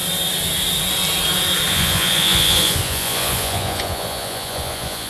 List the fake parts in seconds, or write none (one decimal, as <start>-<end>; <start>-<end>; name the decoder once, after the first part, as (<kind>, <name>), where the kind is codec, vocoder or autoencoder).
1.7-5.1 (vocoder, Vocos)